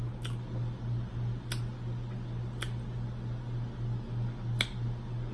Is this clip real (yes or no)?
yes